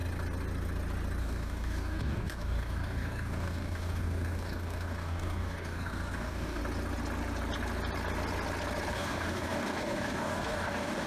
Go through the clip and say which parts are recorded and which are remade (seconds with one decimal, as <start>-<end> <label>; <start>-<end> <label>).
0.0-1.2 recorded; 1.2-6.6 remade; 6.6-8.9 recorded; 8.9-11.1 remade